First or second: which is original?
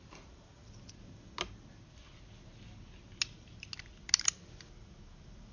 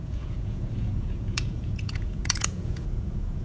first